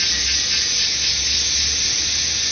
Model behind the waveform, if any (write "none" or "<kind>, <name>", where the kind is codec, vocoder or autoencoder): none